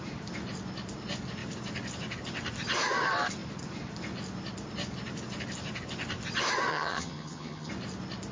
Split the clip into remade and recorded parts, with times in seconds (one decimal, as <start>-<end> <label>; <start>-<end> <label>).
0.0-6.7 recorded; 6.7-7.7 remade; 7.7-8.3 recorded